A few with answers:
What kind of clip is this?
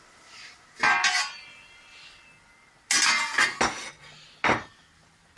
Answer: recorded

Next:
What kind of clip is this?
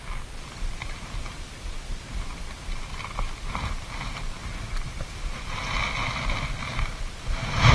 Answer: recorded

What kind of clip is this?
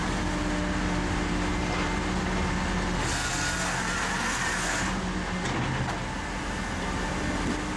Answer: recorded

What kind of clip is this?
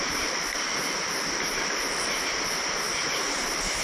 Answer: recorded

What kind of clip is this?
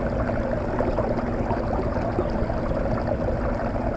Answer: recorded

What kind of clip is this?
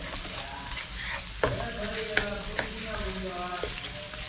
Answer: recorded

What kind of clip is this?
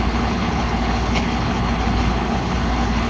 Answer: remade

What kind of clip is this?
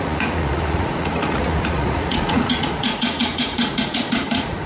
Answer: remade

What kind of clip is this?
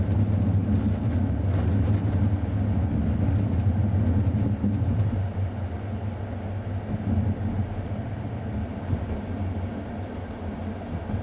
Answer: recorded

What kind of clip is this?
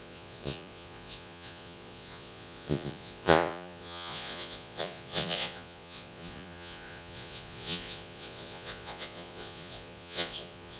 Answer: remade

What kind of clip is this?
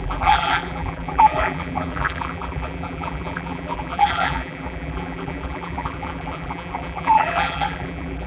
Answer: remade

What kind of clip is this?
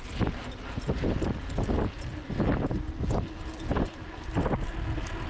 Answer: recorded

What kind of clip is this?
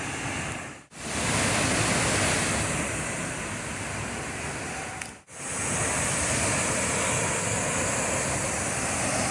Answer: recorded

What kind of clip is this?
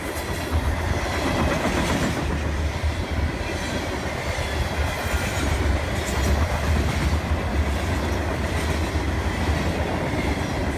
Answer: recorded